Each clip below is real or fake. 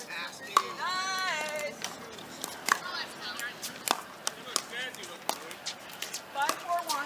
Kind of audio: real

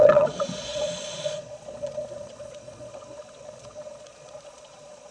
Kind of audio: fake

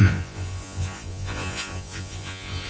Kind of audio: fake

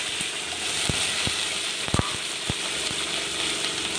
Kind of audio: real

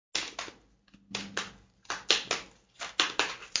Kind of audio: real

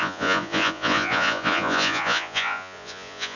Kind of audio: fake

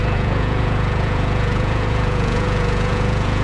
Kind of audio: fake